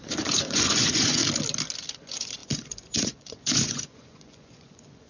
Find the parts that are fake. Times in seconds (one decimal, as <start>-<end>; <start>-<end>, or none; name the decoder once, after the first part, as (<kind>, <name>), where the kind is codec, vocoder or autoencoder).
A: 0.0-1.2 (vocoder, Vocos); 1.9-5.1